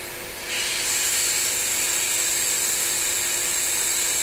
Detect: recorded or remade recorded